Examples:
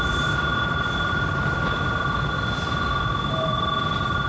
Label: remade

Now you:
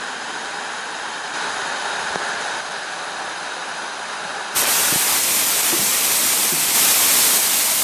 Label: remade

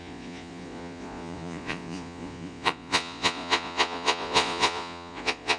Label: remade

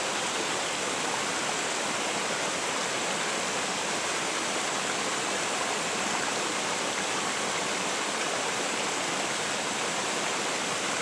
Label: recorded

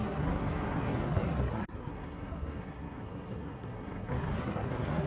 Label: remade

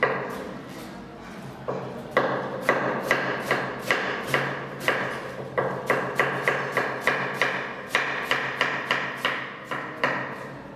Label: recorded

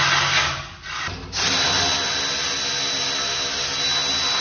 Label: recorded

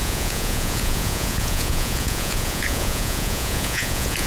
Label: remade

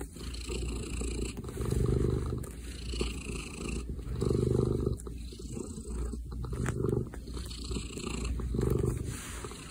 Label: recorded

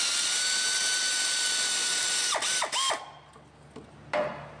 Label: recorded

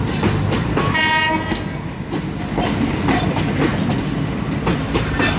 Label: recorded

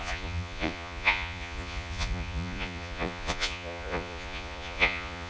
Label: remade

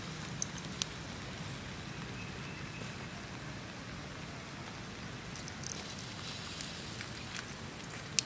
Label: recorded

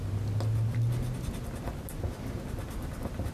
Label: recorded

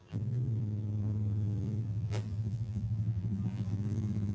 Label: remade